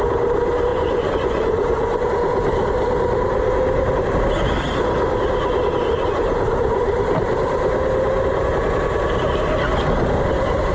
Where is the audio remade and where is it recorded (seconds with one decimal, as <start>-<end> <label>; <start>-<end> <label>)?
0.0-0.7 recorded; 0.7-2.1 remade; 2.1-10.7 recorded